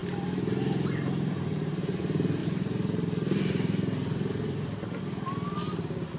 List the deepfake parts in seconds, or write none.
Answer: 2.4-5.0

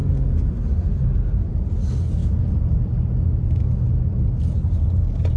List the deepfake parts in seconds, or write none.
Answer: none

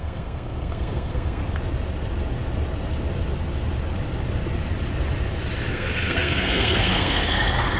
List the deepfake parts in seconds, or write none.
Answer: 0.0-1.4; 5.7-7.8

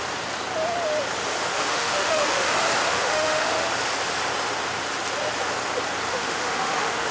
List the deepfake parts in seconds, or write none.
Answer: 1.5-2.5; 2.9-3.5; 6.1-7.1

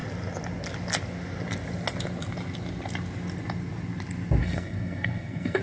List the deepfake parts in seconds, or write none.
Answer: 4.4-5.6

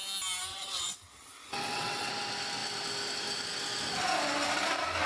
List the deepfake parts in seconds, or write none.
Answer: 0.5-2.1

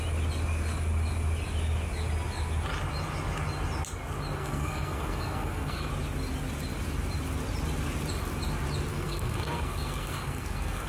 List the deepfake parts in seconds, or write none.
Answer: 4.4-5.9; 8.9-10.9